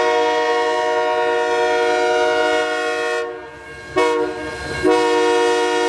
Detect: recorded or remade recorded